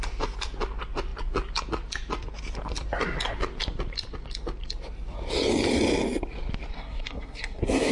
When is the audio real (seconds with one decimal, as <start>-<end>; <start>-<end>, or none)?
0.0-6.7